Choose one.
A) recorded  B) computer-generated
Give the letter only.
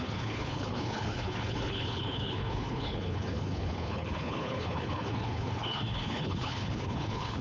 B